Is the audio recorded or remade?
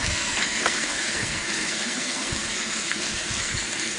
remade